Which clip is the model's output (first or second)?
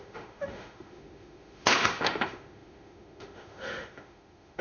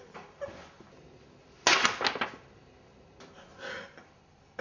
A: first